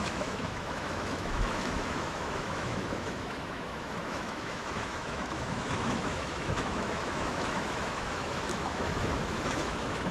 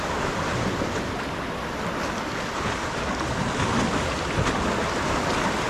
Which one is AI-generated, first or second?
first